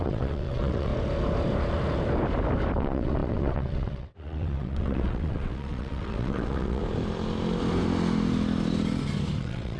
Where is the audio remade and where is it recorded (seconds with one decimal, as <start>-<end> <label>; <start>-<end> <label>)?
0.0-0.9 remade; 0.9-2.8 recorded; 2.8-6.8 remade; 6.8-9.4 recorded; 9.4-9.8 remade